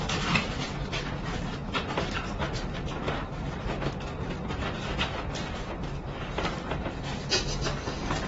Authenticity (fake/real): real